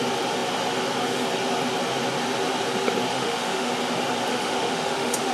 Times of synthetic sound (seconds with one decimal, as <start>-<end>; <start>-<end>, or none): 3.1-3.7; 4.3-5.3